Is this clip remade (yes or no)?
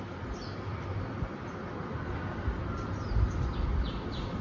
no